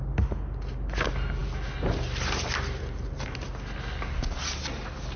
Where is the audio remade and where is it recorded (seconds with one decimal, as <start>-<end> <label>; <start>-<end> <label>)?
0.0-5.2 recorded